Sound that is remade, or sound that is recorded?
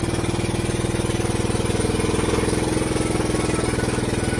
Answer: recorded